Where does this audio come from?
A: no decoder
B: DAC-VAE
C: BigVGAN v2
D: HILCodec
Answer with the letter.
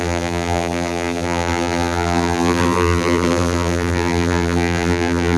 C